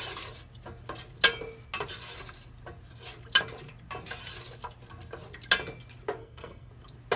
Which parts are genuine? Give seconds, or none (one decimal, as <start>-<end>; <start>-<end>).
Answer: 0.0-6.2; 6.7-7.2